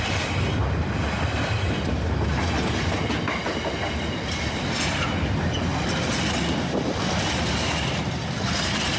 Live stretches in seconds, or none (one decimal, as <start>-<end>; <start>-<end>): 0.0-9.0